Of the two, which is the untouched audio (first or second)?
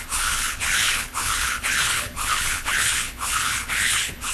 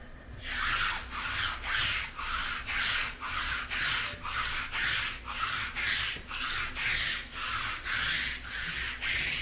second